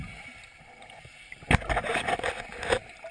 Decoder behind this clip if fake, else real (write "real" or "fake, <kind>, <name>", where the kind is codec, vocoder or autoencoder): real